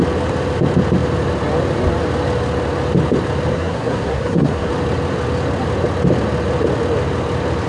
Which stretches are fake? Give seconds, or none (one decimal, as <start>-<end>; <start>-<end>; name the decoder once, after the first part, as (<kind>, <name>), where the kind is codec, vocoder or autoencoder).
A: 3.5-4.7 (codec, SNAC)